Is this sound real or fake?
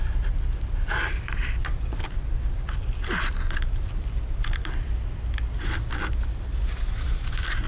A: fake